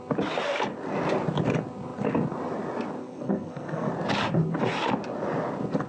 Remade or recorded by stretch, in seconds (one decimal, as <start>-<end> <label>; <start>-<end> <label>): 0.0-3.0 recorded; 3.0-3.9 remade; 3.9-5.9 recorded